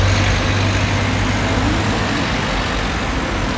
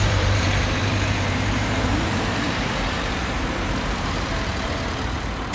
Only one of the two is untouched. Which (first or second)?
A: first